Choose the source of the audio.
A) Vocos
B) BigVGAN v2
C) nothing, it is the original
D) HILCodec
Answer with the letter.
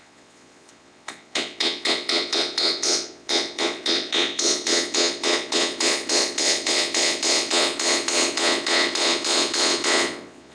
A